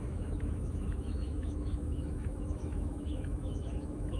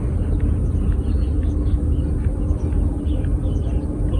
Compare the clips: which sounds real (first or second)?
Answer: second